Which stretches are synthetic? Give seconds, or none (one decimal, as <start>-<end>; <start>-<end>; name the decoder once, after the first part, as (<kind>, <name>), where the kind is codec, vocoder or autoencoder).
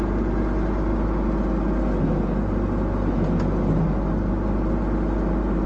none